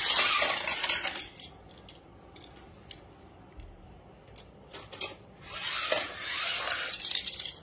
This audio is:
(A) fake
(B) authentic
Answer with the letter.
B